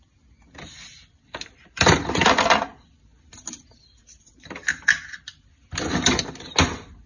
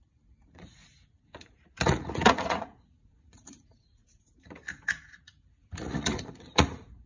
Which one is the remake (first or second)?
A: second